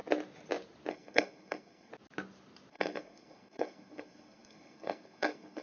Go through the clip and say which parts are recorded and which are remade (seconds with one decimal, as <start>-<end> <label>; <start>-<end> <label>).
0.0-0.9 recorded; 0.9-1.9 remade; 1.9-2.7 recorded; 2.7-5.6 remade